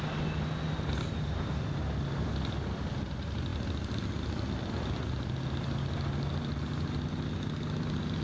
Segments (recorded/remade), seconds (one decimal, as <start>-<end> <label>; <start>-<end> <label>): 0.0-8.2 recorded